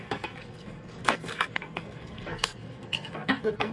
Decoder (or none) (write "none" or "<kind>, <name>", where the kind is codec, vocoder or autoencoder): codec, SNAC